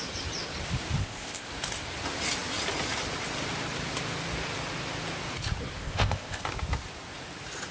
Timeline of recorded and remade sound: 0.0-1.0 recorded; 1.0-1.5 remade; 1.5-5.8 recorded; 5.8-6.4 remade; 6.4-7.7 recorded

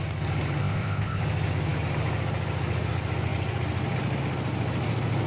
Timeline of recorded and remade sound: 0.0-0.6 recorded; 0.6-1.2 remade; 1.2-5.3 recorded

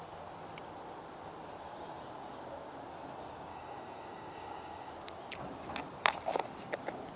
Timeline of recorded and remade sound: 0.0-3.5 recorded; 3.5-4.9 remade; 4.9-7.2 recorded